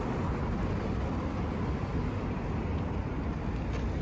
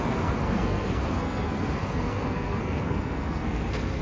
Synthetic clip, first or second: second